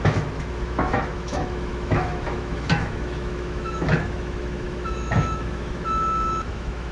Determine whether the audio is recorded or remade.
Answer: remade